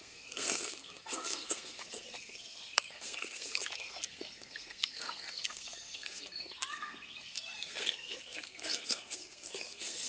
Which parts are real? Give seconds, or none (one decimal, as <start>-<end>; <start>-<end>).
none